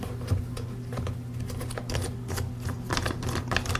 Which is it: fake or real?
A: real